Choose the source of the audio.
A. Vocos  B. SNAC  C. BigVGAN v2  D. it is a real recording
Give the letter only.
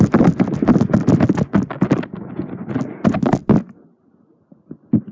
D